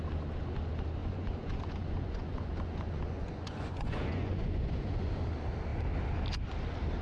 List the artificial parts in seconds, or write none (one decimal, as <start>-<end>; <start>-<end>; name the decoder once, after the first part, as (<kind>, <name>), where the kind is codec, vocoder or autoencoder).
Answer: 1.0-5.1 (vocoder, Vocos)